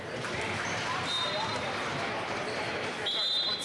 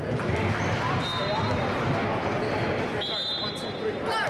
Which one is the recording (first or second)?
second